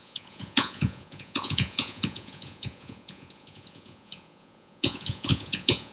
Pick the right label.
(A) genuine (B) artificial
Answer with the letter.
B